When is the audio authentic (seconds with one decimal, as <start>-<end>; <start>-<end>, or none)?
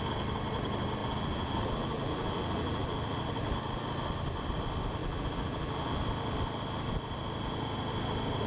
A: 0.0-1.0; 3.2-5.0; 6.0-8.5